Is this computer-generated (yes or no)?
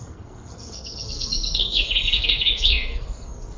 yes